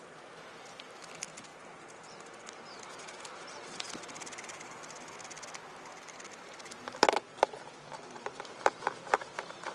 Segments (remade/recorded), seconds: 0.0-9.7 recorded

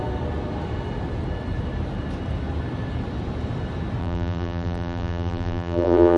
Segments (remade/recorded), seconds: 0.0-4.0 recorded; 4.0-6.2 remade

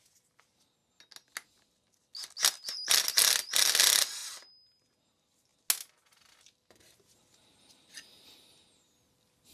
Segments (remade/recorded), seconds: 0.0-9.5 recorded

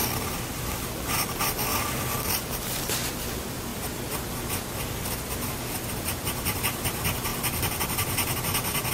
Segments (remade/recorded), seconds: 0.0-8.9 recorded

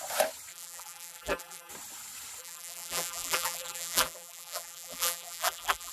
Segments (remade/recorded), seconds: 0.0-0.5 recorded; 0.5-1.7 remade; 1.7-2.4 recorded; 2.4-5.9 remade